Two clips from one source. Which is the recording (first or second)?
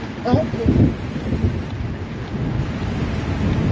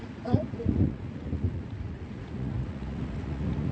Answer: first